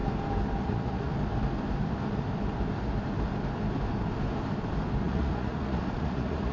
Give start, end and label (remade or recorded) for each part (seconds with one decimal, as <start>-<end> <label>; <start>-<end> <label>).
0.0-0.6 recorded; 0.6-1.1 remade; 1.1-5.0 recorded; 5.0-6.5 remade